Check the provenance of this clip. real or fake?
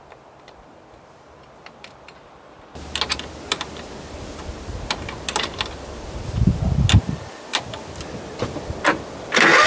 real